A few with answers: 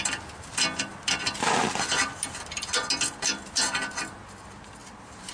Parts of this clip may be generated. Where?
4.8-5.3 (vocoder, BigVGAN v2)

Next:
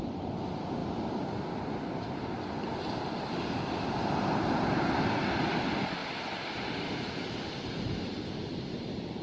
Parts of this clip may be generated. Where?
none

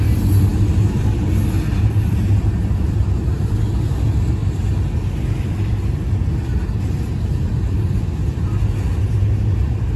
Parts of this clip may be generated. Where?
none

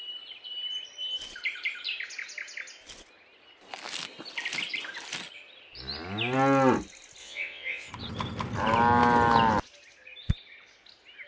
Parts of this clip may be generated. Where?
7.2-7.9 (vocoder, WaveNeXt)

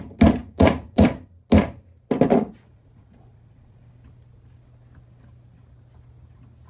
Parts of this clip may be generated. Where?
0.4-1.0 (vocoder, Vocos); 2.3-3.8

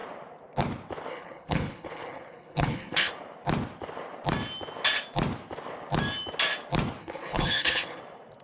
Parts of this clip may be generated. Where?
1.1-3.1 (codec, HILCodec); 7.0-8.0

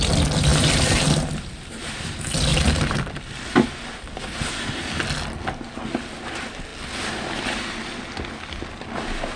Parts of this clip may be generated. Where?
0.5-2.1 (vocoder, BigVGAN v2); 2.5-3.1

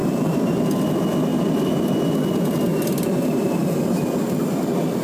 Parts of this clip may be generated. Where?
0.0-0.6 (vocoder, BigVGAN v2); 1.3-1.9; 2.7-4.0